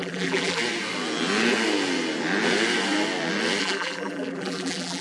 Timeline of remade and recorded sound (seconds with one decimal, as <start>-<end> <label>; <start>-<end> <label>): 0.0-0.6 remade; 0.6-3.6 recorded; 3.6-5.0 remade